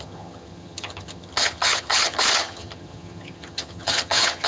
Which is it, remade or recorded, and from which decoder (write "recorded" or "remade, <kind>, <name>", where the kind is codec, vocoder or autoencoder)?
remade, vocoder, HiFi-GAN